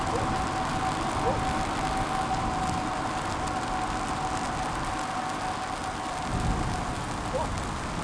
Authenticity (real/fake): real